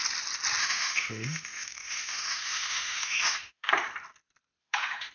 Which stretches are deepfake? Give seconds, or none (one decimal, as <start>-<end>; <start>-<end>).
0.6-3.7; 4.6-5.1

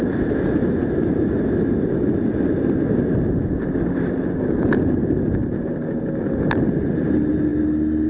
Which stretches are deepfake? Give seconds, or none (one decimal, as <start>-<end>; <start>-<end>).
none

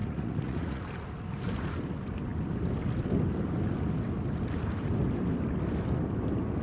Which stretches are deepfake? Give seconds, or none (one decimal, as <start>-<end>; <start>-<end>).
0.0-0.8